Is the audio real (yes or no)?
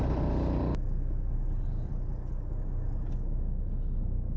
yes